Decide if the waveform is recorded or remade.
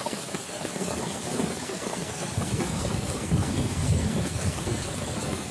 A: remade